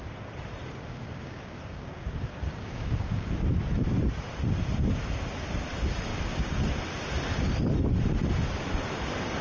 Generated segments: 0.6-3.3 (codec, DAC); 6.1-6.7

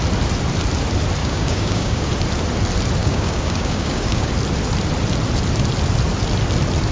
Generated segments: 1.2-2.1 (codec, DAC); 3.0-4.3

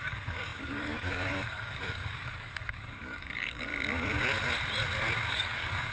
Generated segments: 0.0-3.7 (codec, DAC); 5.3-5.9

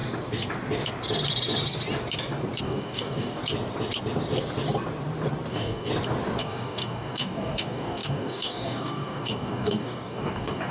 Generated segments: 2.6-3.4 (codec, DAC); 5.5-5.9; 6.4-10.7